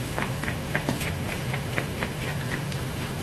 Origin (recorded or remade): remade